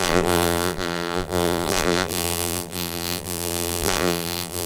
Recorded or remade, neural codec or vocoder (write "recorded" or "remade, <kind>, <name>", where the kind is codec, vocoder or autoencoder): remade, vocoder, BigVGAN v2